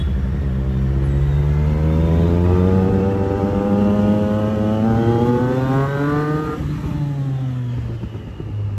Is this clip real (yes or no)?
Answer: yes